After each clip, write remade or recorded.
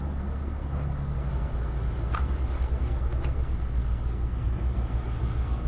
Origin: remade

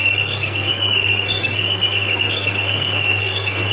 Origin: remade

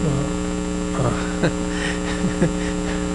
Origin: recorded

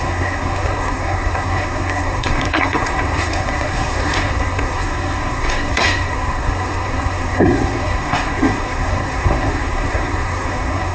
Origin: remade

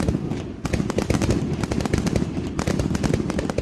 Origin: recorded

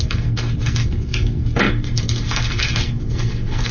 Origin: remade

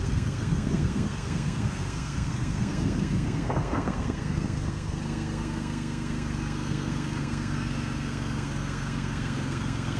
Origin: remade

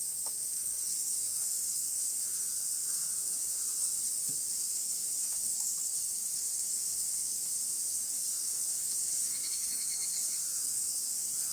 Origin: remade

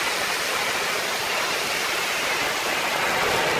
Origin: recorded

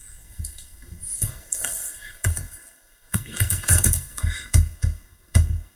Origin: remade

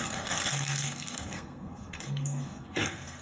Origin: remade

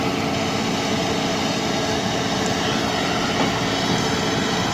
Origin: recorded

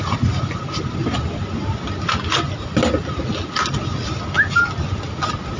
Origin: recorded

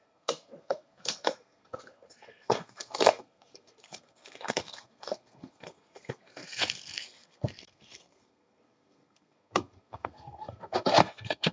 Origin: remade